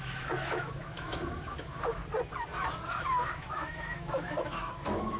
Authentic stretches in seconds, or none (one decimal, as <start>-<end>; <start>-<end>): 2.0-3.0